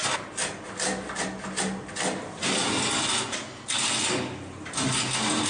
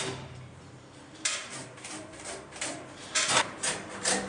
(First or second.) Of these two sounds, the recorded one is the first